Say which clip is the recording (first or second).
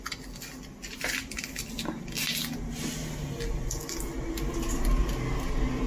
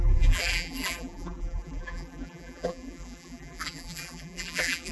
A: first